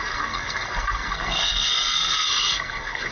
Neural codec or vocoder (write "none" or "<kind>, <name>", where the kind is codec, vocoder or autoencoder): codec, SNAC